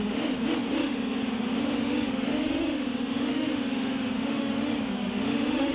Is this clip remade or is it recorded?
remade